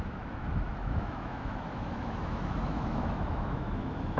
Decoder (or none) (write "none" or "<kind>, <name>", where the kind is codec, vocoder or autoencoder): autoencoder, DAC-VAE